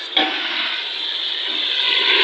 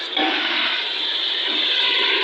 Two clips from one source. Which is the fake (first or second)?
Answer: second